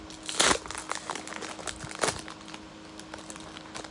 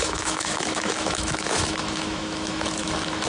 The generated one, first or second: second